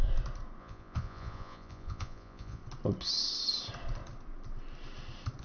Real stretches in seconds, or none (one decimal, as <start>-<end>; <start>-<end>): 0.0-0.6; 2.6-5.4